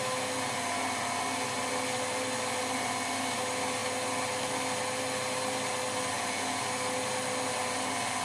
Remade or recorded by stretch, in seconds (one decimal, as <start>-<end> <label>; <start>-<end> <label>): 0.0-8.2 recorded